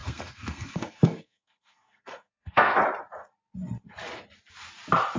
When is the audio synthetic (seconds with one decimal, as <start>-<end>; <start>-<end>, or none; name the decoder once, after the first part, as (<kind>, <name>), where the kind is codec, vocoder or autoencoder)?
0.0-2.8 (codec, SNAC)